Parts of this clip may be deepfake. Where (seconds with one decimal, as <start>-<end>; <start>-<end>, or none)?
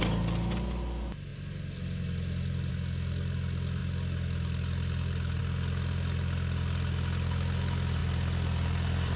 8.0-9.2